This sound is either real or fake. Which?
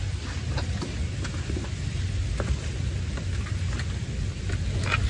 real